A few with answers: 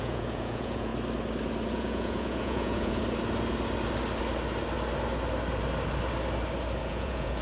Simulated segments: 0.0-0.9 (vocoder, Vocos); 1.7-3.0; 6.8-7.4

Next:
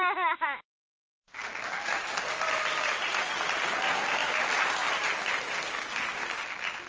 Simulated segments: none

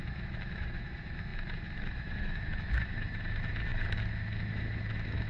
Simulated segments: 0.0-5.3 (autoencoder, DAC-VAE)

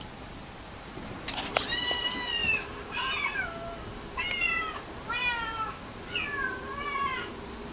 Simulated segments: none

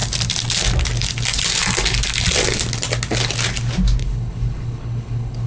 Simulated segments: 4.0-5.5 (codec, HILCodec)

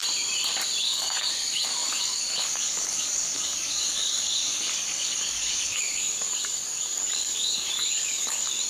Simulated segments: 0.8-8.7 (codec, DAC)

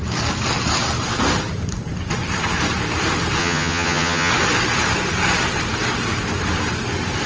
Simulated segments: 3.4-4.3 (vocoder, HiFi-GAN)

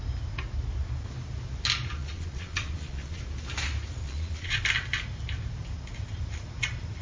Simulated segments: 2.0-3.2 (vocoder, Vocos); 4.0-4.6